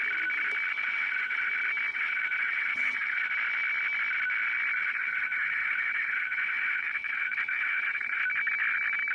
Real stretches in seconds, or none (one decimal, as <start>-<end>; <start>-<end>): 0.0-0.7; 1.5-1.9; 3.3-4.8; 8.2-9.1